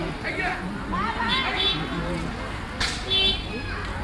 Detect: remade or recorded recorded